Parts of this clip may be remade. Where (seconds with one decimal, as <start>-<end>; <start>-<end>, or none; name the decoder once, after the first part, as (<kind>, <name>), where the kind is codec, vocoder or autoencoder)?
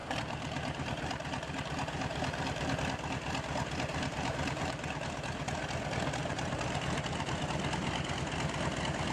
0.0-2.8 (vocoder, BigVGAN v2); 3.9-5.0; 6.2-7.4